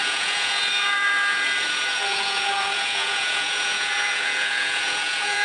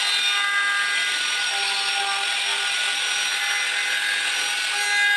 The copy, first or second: first